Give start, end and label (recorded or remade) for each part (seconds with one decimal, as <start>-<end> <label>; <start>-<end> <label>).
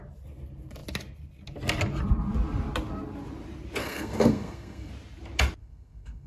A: 0.0-3.8 recorded; 3.8-4.9 remade; 4.9-5.6 recorded; 5.6-6.3 remade